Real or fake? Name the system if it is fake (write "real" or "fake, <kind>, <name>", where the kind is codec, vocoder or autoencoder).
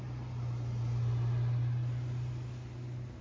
real